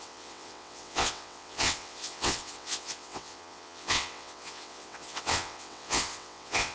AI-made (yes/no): yes